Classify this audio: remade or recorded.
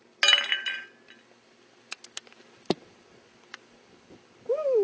recorded